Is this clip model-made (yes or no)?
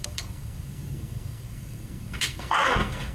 yes